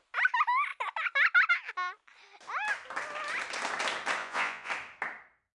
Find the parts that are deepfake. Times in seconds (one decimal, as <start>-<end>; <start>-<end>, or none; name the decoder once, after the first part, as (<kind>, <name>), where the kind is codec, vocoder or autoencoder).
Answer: 4.2-4.7 (vocoder, Vocos)